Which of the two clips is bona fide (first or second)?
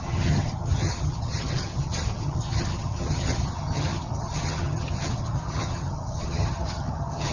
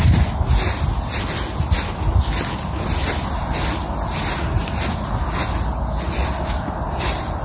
second